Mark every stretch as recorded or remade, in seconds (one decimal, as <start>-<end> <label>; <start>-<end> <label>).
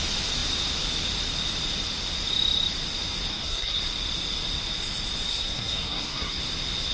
0.0-3.3 recorded; 3.3-3.8 remade; 3.8-5.3 recorded; 5.3-6.4 remade; 6.4-6.9 recorded